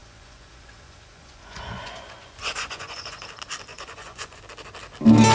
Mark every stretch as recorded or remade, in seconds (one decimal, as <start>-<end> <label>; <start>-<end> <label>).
0.0-3.2 remade; 3.2-3.7 recorded; 3.7-4.4 remade; 4.4-5.3 recorded